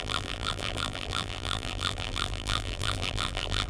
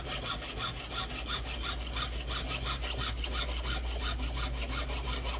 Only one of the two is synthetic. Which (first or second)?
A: first